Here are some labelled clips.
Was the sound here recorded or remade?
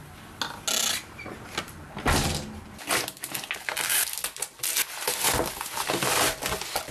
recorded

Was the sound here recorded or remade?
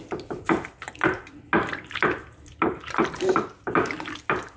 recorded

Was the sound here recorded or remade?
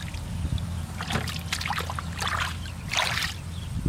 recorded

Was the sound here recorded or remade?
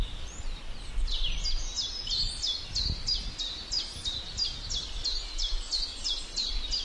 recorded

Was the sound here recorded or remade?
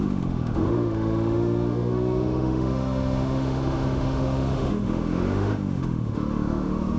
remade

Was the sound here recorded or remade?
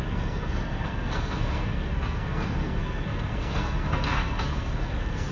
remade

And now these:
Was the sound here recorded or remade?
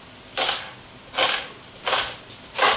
recorded